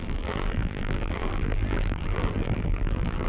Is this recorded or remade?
remade